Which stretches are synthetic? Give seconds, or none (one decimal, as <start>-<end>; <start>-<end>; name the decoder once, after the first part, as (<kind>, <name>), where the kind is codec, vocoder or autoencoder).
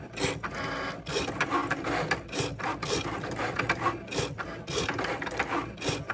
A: none